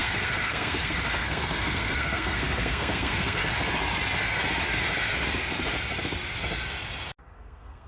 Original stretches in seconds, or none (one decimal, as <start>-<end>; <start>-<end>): 3.4-7.2